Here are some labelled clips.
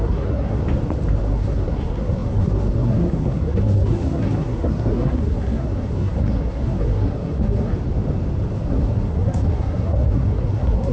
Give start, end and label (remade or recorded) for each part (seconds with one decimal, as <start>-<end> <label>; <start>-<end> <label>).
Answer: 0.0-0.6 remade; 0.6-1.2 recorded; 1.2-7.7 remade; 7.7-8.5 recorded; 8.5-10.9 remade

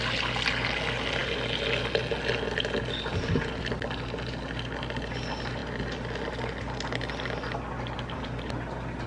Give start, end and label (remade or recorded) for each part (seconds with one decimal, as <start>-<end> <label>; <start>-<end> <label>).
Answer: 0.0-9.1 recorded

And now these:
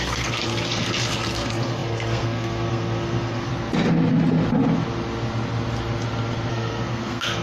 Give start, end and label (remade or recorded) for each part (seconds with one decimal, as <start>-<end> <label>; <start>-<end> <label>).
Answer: 0.0-3.5 remade; 3.5-6.5 recorded; 6.5-7.4 remade

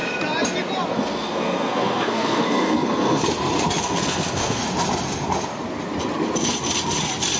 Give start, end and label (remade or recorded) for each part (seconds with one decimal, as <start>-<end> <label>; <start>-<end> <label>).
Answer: 0.0-0.9 recorded; 0.9-3.2 remade; 3.2-3.8 recorded; 3.8-4.6 remade; 4.6-7.4 recorded